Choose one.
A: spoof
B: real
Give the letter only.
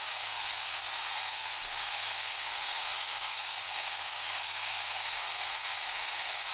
A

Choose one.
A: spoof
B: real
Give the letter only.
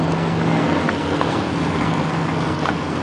A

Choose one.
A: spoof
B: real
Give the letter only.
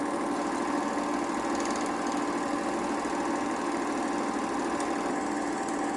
B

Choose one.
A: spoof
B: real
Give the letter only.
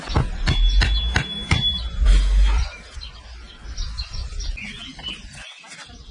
B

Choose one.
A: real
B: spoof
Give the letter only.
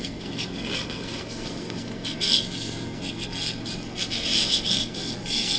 B